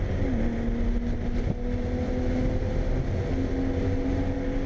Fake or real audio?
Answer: real